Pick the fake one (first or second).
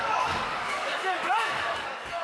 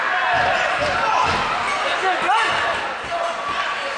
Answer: first